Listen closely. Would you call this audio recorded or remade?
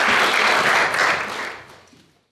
recorded